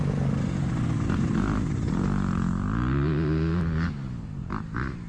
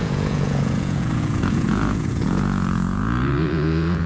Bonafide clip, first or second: first